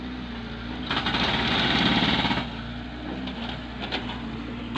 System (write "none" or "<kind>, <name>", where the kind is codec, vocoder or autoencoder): none